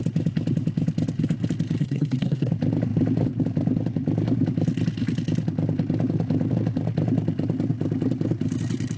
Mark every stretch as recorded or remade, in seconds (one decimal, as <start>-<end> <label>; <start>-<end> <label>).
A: 0.0-1.8 recorded; 1.8-2.5 remade; 2.5-9.0 recorded